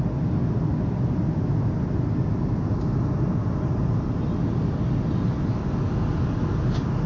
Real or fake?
real